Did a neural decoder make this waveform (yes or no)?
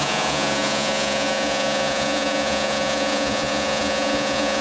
yes